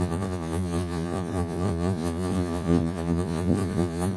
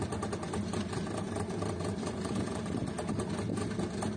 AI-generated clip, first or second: first